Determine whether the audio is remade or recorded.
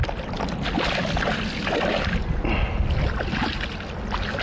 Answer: recorded